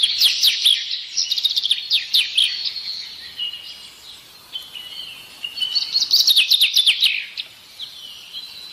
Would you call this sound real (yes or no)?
yes